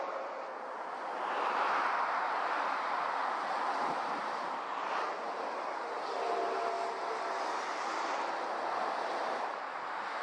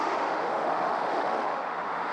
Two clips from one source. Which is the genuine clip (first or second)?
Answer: first